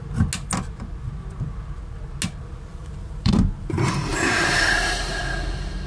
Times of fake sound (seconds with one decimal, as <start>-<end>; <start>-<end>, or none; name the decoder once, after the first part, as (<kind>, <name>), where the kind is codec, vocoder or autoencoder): 2.7-3.3 (vocoder, BigVGAN v2); 4.1-5.2